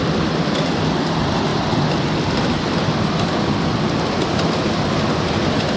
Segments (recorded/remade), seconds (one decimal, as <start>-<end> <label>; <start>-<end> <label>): 0.0-5.8 recorded